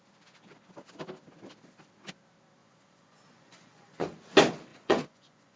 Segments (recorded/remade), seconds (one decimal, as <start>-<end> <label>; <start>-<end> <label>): 0.0-2.6 recorded; 2.6-4.2 remade; 4.2-4.7 recorded; 4.7-5.6 remade

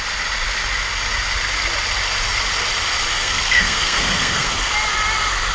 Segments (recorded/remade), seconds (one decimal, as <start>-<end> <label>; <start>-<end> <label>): 0.0-3.2 recorded; 3.2-4.5 remade; 4.5-5.5 recorded

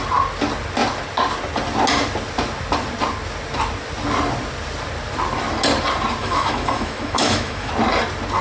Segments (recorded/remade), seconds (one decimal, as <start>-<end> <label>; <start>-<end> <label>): 0.0-6.2 recorded; 6.2-7.7 remade; 7.7-8.4 recorded

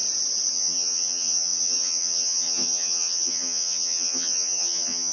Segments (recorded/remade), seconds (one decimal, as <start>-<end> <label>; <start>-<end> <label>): 0.0-0.5 recorded; 0.5-5.1 remade

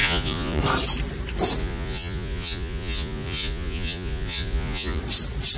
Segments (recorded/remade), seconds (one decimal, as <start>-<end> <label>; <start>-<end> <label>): 0.0-0.6 remade; 0.6-1.6 recorded; 1.6-5.0 remade; 5.0-5.6 recorded

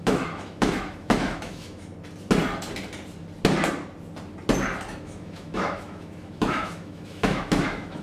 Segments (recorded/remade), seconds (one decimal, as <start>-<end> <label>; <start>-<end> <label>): 0.0-1.9 remade; 1.9-5.0 recorded; 5.0-8.0 remade

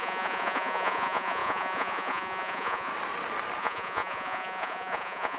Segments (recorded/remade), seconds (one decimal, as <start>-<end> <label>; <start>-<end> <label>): 0.0-2.9 remade; 2.9-3.6 recorded; 3.6-5.4 remade

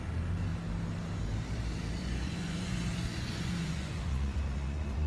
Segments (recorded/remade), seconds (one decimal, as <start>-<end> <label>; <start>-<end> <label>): 0.0-2.0 recorded; 2.0-5.1 remade